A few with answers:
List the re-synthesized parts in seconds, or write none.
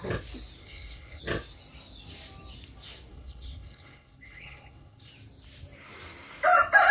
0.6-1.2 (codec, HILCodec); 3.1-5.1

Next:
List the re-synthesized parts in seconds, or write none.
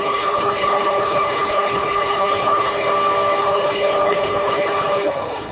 0.0-2.9 (codec, HILCodec); 3.4-5.5